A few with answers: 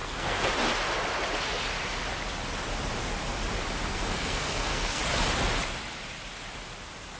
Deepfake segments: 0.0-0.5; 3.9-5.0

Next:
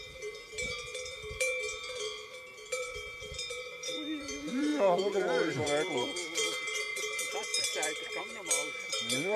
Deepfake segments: 0.0-7.5; 8.2-9.4

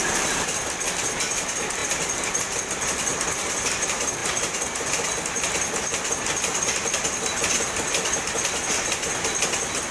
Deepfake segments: none

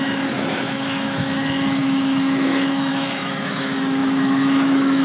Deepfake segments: 0.0-5.0

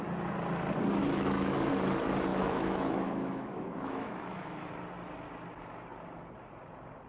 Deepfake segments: 1.0-1.7; 2.3-4.7

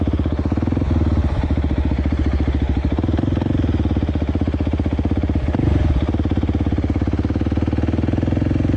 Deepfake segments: 1.2-1.9